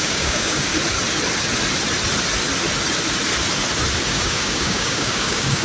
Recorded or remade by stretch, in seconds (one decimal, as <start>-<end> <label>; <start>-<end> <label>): 0.0-0.7 remade; 0.7-4.1 recorded; 4.1-5.6 remade